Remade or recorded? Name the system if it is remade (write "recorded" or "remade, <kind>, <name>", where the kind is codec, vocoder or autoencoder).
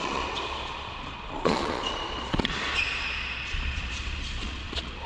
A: remade, vocoder, Vocos